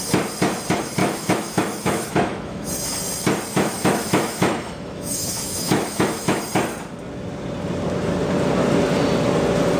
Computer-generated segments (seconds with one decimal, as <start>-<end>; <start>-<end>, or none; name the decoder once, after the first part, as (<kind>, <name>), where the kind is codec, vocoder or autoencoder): 1.0-2.7 (autoencoder, DAC-VAE); 3.5-6.4